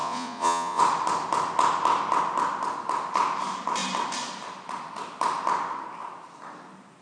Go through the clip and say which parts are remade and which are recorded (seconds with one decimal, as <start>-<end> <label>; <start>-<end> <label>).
0.0-0.8 remade; 0.8-7.0 recorded